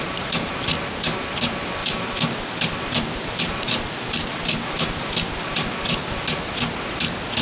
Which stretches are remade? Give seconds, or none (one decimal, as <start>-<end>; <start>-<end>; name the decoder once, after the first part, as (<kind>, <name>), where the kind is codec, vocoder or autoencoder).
1.8-6.2 (vocoder, BigVGAN v2)